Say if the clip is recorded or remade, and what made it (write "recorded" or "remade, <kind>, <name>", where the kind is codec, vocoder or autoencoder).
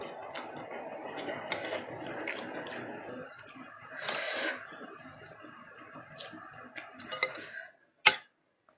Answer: recorded